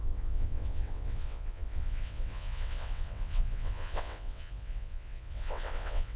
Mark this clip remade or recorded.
remade